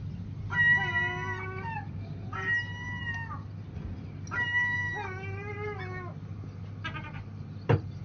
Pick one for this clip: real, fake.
real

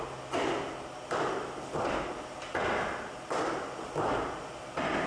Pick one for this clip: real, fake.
real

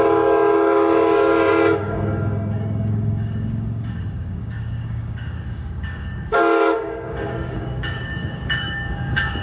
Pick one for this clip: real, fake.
fake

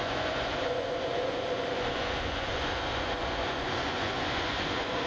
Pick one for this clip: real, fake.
fake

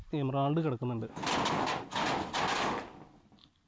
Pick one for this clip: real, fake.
real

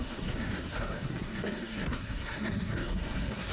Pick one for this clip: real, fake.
fake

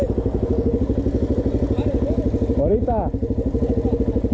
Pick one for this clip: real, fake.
real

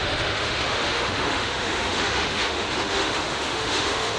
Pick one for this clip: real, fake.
fake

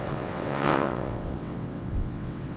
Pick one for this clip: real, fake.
fake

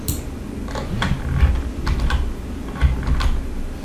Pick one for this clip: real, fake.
real